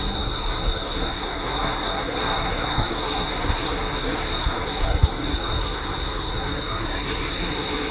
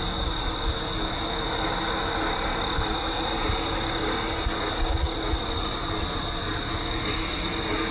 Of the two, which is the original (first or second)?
second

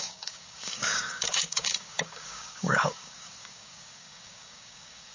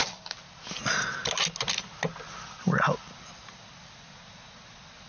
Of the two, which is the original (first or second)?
second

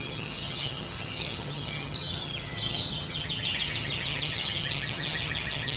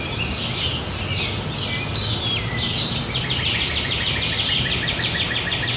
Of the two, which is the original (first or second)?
second